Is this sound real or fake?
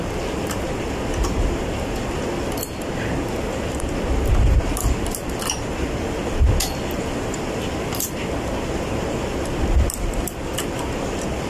real